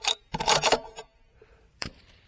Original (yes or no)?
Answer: no